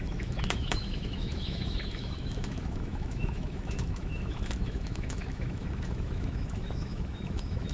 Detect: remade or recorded remade